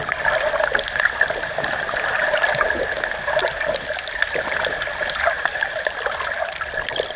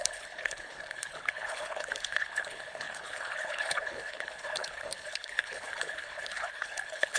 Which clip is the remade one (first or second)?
second